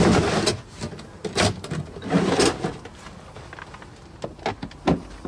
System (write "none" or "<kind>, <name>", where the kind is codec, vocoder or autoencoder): none